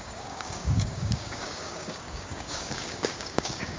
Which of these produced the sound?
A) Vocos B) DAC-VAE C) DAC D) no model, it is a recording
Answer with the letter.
C